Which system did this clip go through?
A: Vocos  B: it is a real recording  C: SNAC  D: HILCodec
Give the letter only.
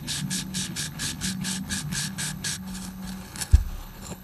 D